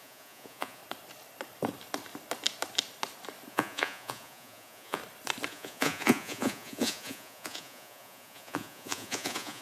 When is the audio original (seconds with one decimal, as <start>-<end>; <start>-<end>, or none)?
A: 0.8-3.5; 5.0-5.5